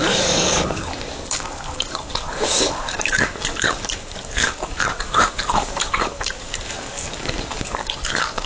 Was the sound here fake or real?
fake